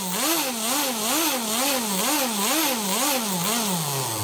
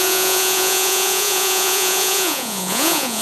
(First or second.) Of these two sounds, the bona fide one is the first